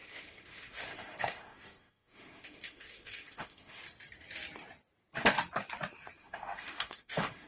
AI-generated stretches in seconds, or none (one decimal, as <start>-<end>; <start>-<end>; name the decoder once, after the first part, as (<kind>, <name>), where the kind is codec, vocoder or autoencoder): 0.0-3.8 (autoencoder, DAC-VAE); 6.2-7.5

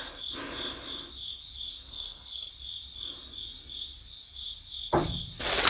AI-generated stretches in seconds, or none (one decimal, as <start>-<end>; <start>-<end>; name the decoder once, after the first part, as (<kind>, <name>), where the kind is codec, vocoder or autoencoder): 1.9-2.5 (codec, SNAC)

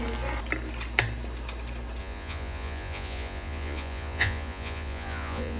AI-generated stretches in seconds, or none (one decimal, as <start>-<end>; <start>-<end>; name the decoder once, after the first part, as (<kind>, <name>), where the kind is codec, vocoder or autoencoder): 2.0-5.6 (vocoder, Vocos)

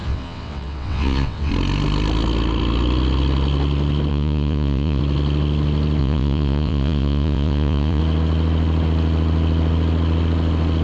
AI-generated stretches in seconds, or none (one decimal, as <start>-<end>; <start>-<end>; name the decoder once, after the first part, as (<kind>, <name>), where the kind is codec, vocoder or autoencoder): 0.0-1.5 (vocoder, WaveNeXt); 4.1-5.0; 6.0-8.0

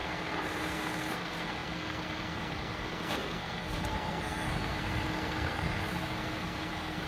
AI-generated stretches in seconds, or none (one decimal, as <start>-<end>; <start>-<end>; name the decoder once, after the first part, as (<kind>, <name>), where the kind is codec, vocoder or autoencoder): 0.0-7.1 (codec, SNAC)

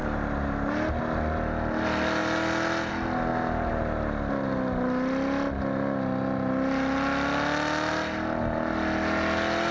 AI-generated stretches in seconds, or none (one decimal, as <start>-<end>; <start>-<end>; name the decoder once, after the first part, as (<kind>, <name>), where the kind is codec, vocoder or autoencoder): none

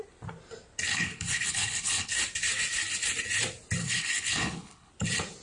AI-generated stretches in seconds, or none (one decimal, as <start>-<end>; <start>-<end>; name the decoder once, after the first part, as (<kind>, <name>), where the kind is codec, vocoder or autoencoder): 0.9-2.1 (codec, HILCodec); 3.8-4.9

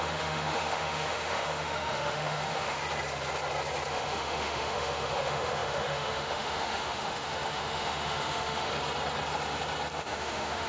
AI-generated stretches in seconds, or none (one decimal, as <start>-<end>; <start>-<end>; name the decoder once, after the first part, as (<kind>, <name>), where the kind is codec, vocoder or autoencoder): 0.0-2.8 (autoencoder, DAC-VAE); 3.9-8.7; 10.0-10.7